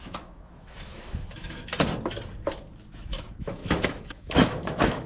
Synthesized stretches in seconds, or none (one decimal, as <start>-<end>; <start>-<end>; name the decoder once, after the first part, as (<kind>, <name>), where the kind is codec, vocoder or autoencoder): 0.0-1.7 (autoencoder, DAC-VAE); 2.9-5.1